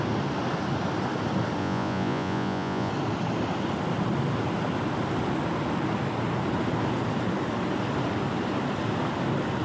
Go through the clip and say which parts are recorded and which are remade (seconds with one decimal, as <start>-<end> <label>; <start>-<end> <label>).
0.0-1.6 recorded; 1.6-2.9 remade; 2.9-9.6 recorded